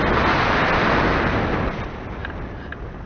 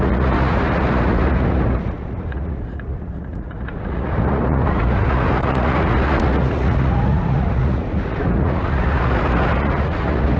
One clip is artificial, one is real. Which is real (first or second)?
first